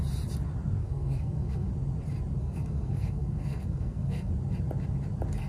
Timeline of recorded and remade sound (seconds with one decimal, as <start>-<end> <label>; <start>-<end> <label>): 0.0-0.8 recorded; 0.8-1.7 remade; 1.7-2.4 recorded; 2.4-4.3 remade; 4.3-5.5 recorded